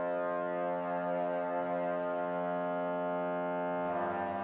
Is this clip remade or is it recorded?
recorded